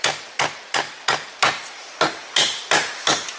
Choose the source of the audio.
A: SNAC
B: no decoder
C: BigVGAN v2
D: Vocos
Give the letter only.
B